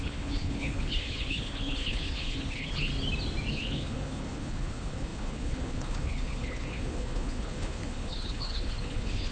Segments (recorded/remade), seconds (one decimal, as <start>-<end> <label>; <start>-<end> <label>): 0.0-2.9 remade; 2.9-3.5 recorded; 3.5-9.3 remade